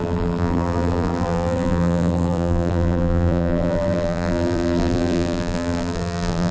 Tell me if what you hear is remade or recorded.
remade